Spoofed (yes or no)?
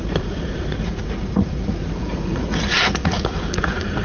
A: yes